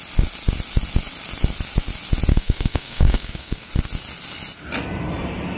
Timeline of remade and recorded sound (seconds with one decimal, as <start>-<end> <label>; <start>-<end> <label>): 0.0-2.3 recorded; 2.3-3.7 remade; 3.7-5.6 recorded